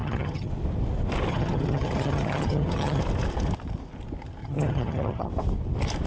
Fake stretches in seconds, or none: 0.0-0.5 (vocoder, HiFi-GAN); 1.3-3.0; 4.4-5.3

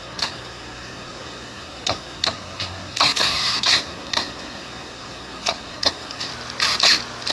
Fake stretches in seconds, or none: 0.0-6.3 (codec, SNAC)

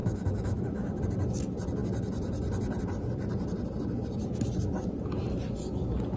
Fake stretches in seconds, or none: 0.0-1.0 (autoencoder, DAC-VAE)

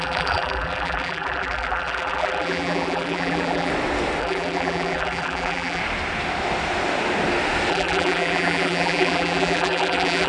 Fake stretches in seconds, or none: 0.0-3.7 (vocoder, BigVGAN v2); 4.2-5.8; 7.7-10.3

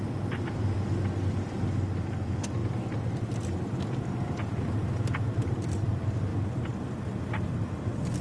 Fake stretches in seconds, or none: 0.0-2.6 (vocoder, BigVGAN v2); 3.9-6.3; 7.5-8.2

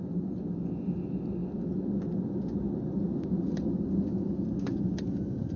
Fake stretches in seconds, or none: none